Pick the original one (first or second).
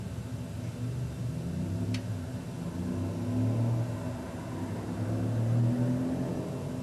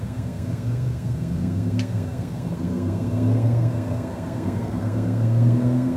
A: first